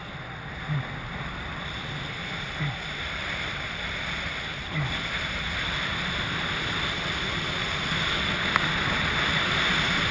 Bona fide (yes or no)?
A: yes